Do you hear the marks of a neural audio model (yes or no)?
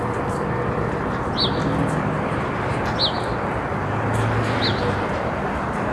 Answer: no